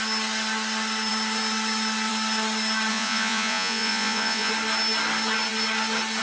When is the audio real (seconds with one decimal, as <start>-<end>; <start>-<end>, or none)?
0.0-2.9; 4.5-6.2